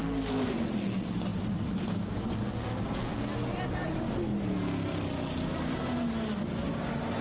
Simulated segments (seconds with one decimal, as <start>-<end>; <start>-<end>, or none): none